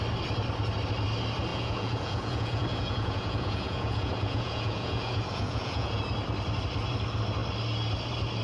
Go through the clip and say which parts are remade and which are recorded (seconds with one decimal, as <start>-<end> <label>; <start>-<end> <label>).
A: 0.0-1.5 recorded; 1.5-6.0 remade; 6.0-8.4 recorded